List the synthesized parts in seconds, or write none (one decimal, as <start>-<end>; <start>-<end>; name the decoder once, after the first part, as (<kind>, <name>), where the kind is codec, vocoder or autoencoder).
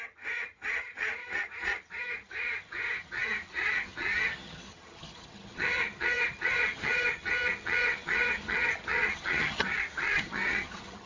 0.0-11.1 (vocoder, HiFi-GAN)